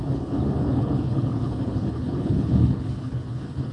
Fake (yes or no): yes